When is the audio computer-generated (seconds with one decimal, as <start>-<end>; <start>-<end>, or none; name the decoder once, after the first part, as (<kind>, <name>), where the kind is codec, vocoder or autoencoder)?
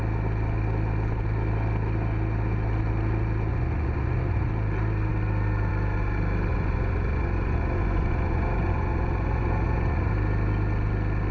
3.5-4.5 (vocoder, Vocos); 6.5-10.1